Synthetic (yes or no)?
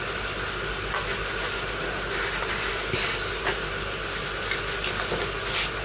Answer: no